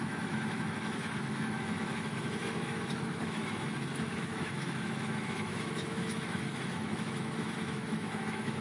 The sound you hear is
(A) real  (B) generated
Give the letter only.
B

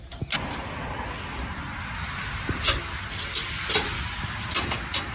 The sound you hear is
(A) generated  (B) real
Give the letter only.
B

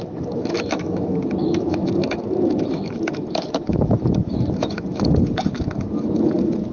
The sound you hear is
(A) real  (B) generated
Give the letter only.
B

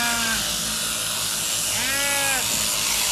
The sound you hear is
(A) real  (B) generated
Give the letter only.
A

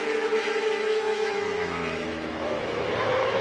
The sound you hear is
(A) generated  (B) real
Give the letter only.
A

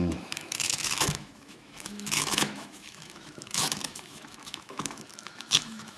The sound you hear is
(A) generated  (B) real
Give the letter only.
A